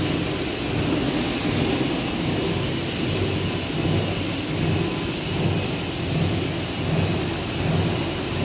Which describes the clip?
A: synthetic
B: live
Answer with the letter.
B